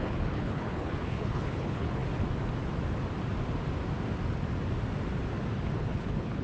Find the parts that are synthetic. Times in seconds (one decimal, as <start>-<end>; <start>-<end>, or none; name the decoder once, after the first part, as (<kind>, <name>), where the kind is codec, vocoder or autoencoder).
0.0-2.0 (codec, HILCodec); 5.8-6.4